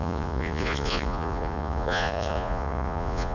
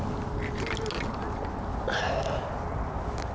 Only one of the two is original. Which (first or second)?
second